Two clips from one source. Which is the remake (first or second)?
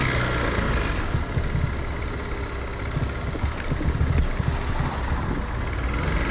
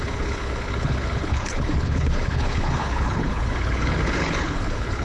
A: second